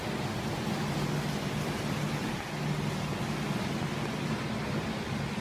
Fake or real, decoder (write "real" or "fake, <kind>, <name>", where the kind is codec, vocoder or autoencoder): real